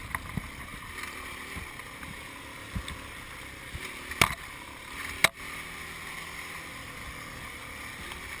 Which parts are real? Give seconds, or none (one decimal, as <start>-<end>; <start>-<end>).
0.0-8.4